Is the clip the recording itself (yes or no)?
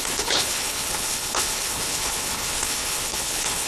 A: no